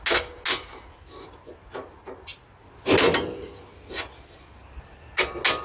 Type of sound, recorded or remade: recorded